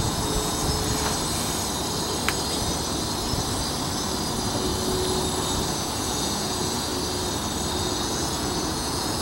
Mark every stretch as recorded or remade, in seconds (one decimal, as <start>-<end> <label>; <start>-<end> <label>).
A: 0.0-0.6 remade; 0.6-5.7 recorded; 5.7-6.9 remade; 6.9-7.8 recorded; 7.8-9.2 remade